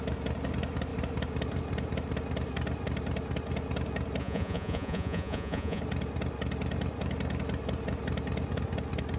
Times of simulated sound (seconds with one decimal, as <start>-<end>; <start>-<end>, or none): 4.2-5.8